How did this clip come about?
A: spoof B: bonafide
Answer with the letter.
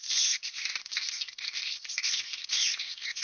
A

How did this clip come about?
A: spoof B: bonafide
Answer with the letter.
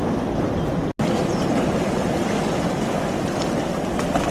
B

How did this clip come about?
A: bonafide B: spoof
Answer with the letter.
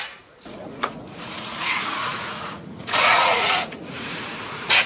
B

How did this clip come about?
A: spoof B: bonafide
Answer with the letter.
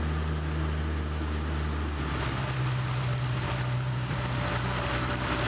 B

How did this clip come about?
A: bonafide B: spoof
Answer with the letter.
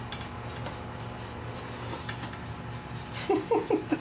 A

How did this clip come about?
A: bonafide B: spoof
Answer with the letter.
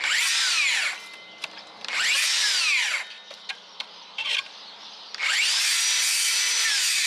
A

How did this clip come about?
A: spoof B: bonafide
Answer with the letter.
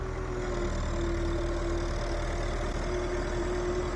B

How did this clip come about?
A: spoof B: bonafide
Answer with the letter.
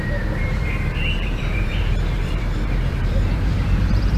A